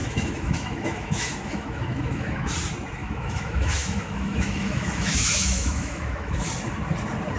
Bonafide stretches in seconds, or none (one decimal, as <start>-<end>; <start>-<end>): 2.5-3.0; 6.5-7.4